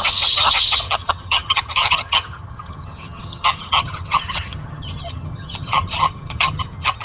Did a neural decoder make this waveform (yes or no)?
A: yes